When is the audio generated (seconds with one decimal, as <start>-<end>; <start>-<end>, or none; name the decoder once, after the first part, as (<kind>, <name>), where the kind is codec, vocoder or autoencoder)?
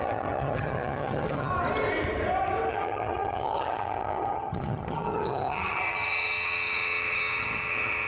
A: 0.0-1.5 (vocoder, HiFi-GAN); 2.7-8.1